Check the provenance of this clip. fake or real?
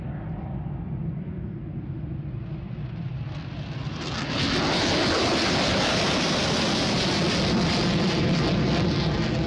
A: real